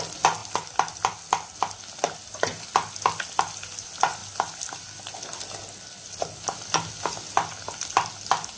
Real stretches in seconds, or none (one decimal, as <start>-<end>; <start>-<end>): 0.0-8.6